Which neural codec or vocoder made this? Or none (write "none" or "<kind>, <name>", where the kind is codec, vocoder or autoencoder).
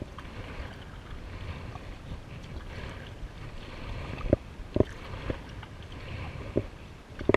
none